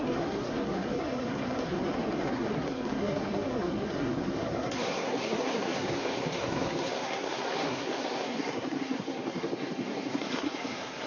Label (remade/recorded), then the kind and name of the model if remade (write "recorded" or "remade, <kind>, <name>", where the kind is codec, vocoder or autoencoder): remade, codec, SNAC